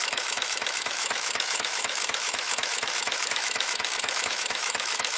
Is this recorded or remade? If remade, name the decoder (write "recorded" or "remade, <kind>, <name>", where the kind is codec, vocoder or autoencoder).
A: remade, autoencoder, DAC-VAE